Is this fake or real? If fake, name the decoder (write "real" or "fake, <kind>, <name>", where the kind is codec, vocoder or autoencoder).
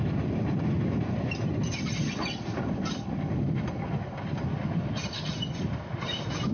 real